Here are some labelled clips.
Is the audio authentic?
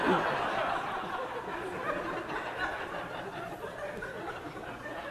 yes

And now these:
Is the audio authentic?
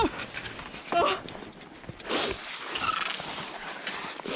yes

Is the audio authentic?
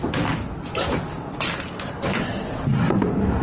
yes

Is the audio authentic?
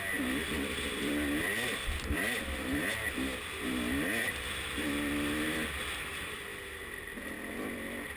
yes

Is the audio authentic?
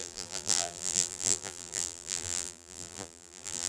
no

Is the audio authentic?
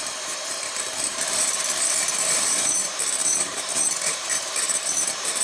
no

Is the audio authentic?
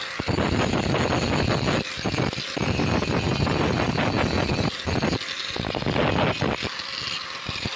yes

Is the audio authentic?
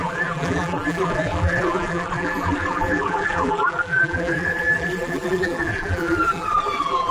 no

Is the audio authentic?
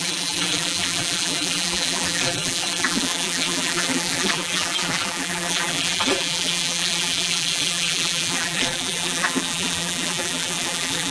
no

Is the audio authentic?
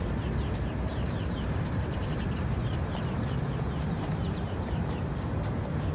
no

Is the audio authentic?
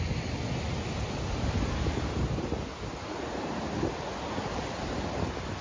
yes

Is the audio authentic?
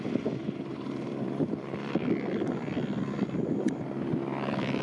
no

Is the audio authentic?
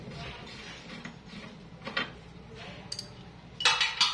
yes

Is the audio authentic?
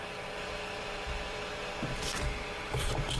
no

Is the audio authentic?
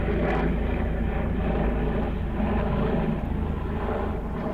yes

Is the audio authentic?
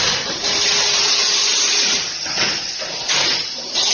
yes